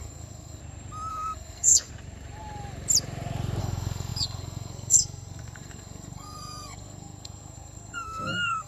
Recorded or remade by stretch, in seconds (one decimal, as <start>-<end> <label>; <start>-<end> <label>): 0.0-0.6 remade; 0.6-1.1 recorded; 1.1-1.9 remade; 1.9-3.6 recorded; 3.6-8.7 remade

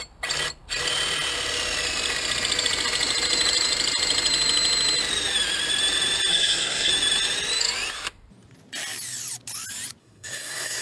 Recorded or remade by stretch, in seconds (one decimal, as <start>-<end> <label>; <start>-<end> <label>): 0.0-6.3 recorded; 6.3-6.9 remade; 6.9-10.0 recorded; 10.0-10.8 remade

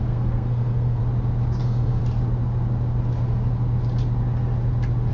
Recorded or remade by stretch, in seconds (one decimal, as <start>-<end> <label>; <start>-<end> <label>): 0.0-1.0 remade; 1.0-1.6 recorded; 1.6-2.0 remade; 2.0-5.1 recorded